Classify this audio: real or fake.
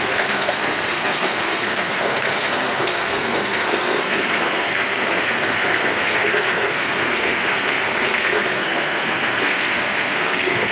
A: fake